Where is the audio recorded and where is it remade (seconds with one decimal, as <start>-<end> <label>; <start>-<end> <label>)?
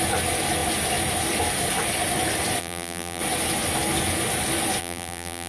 0.0-2.6 recorded; 2.6-3.2 remade; 3.2-4.8 recorded; 4.8-5.5 remade